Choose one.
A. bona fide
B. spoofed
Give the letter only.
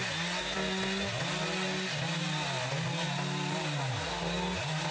A